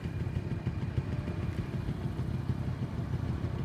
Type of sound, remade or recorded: recorded